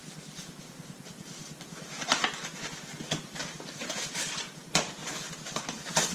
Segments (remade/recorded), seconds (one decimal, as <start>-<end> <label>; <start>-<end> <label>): 0.0-5.0 remade; 5.0-5.6 recorded; 5.6-6.1 remade